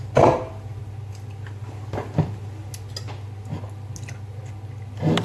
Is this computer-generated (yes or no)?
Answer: no